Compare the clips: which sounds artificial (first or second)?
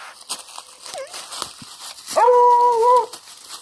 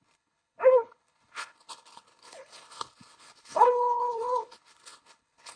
second